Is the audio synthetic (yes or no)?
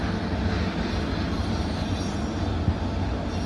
no